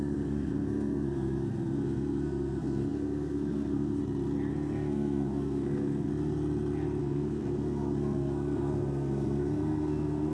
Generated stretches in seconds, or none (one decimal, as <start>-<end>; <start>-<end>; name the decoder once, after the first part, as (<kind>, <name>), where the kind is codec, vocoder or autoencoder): 0.0-4.0 (codec, SNAC); 4.5-6.1; 7.0-10.3